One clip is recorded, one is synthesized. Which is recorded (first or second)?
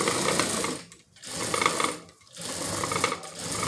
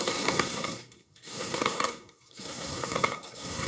first